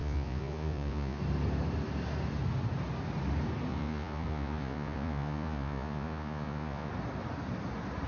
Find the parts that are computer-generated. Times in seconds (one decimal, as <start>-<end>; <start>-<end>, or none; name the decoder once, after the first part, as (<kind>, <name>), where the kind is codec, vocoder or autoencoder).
0.0-1.2 (vocoder, Vocos); 3.7-6.9